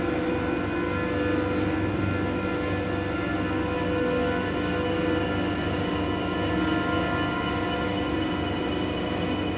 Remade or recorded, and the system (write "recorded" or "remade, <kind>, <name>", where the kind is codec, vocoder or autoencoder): recorded